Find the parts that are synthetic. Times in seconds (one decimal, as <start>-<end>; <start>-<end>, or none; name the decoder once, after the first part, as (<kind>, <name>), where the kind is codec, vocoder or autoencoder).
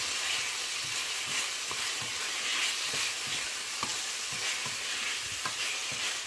none